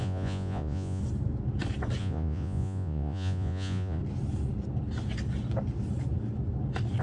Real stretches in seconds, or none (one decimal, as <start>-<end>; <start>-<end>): 1.0-2.0; 4.0-7.0